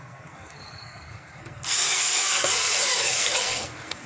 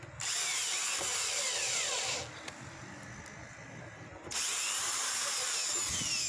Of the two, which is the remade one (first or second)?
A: first